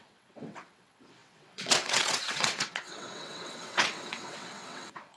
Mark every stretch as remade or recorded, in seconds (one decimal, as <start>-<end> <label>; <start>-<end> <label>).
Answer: 0.0-5.2 remade

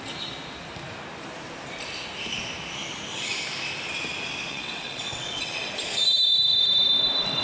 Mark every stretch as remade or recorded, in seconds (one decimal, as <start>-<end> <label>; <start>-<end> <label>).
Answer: 0.0-4.5 recorded; 4.5-5.7 remade; 5.7-7.4 recorded

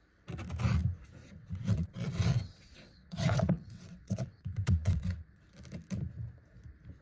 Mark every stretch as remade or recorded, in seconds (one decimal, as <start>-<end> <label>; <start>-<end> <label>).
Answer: 0.0-1.2 recorded; 1.2-5.4 remade; 5.4-7.0 recorded

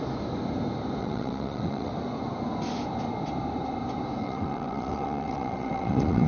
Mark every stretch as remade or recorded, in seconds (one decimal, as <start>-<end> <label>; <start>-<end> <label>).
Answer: 0.0-1.0 recorded; 1.0-1.9 remade; 1.9-4.2 recorded; 4.2-6.3 remade

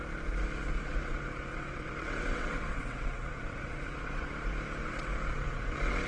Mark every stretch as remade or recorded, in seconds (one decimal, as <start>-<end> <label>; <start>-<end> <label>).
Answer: 0.0-0.8 recorded; 0.8-4.3 remade; 4.3-4.8 recorded; 4.8-6.1 remade

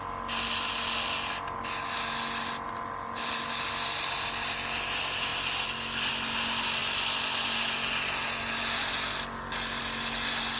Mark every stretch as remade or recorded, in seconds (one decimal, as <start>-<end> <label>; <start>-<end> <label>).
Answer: 0.0-10.6 recorded

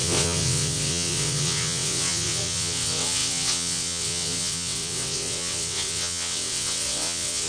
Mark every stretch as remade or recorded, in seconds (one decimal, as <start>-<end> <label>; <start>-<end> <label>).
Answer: 0.0-7.5 remade

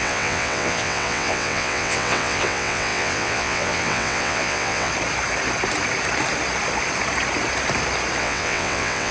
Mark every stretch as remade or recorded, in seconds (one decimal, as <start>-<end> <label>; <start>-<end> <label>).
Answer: 0.0-4.9 remade; 4.9-8.2 recorded; 8.2-9.1 remade